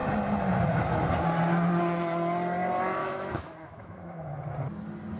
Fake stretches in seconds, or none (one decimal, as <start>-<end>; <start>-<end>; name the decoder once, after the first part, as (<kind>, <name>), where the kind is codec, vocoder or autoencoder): 3.0-4.3 (autoencoder, DAC-VAE)